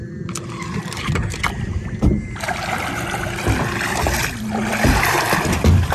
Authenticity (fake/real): real